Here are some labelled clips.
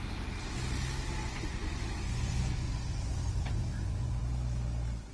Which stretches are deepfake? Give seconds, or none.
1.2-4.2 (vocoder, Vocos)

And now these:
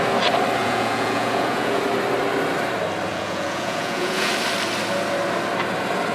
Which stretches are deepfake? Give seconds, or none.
0.6-1.8 (vocoder, Vocos); 3.1-4.3

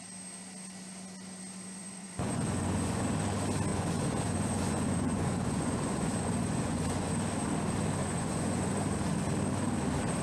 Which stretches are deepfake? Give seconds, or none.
1.8-3.0 (vocoder, Vocos); 3.7-7.1; 8.0-8.7

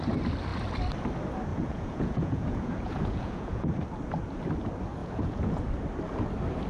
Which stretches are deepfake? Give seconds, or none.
1.5-3.8 (vocoder, Vocos); 5.0-5.6

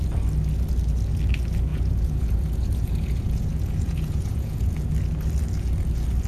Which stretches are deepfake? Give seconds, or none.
1.7-4.9 (vocoder, Vocos)

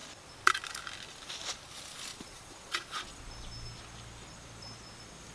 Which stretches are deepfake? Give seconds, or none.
2.1-3.2 (vocoder, Vocos)

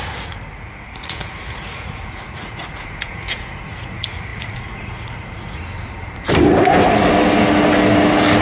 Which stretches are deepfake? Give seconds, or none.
0.0-5.6 (vocoder, Vocos)